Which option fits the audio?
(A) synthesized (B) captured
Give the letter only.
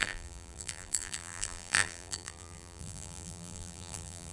A